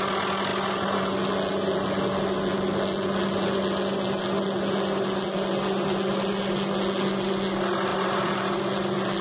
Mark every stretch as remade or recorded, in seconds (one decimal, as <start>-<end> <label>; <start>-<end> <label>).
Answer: 0.0-0.5 recorded; 0.5-1.1 remade; 1.1-7.9 recorded; 7.9-8.6 remade; 8.6-9.2 recorded